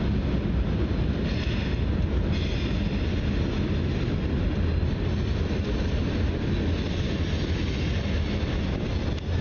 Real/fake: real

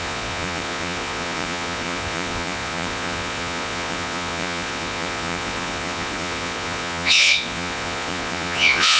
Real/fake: fake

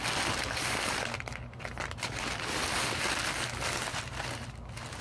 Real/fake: real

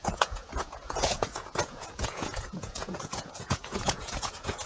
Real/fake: fake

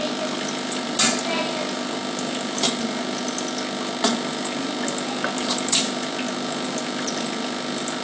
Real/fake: real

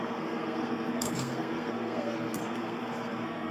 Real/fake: fake